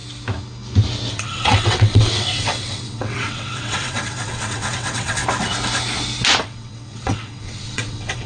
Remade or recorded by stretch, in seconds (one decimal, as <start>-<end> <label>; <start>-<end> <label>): 0.0-1.1 recorded; 1.1-5.2 remade; 5.2-6.4 recorded; 6.4-8.3 remade